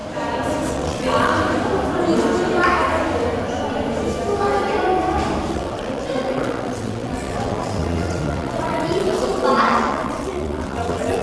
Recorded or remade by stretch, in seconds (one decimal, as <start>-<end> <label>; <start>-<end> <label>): 0.0-0.7 recorded; 0.7-1.3 remade; 1.3-5.5 recorded; 5.5-11.2 remade